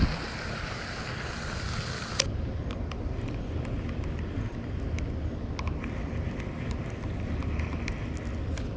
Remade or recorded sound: recorded